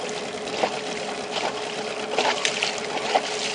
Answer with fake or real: real